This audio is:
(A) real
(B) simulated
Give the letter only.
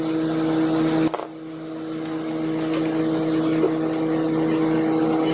A